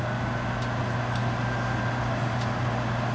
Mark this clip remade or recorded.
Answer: recorded